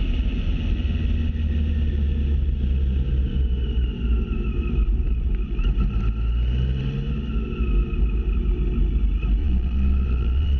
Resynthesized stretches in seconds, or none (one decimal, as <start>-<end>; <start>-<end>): 9.4-10.6